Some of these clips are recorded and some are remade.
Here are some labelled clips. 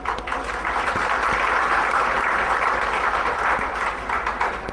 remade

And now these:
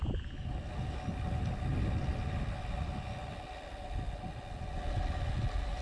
recorded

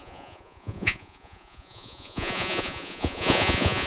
remade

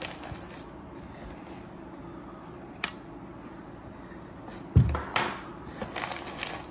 recorded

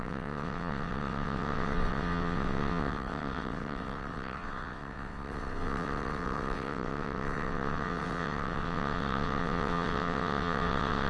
remade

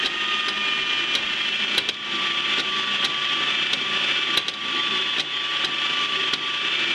recorded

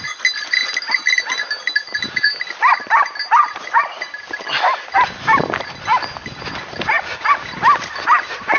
recorded